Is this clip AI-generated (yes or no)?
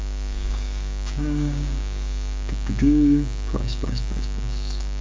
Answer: yes